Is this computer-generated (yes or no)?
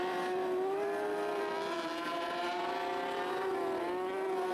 no